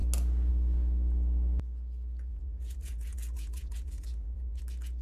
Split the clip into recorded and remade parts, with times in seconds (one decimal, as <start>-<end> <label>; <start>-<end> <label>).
0.0-2.3 recorded; 2.3-4.6 remade; 4.6-5.0 recorded